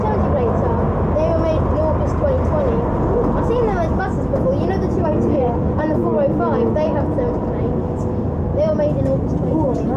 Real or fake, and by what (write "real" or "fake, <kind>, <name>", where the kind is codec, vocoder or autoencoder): real